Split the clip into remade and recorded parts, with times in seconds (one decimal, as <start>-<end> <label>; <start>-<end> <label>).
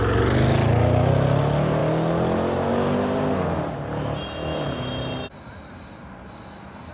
0.0-6.9 recorded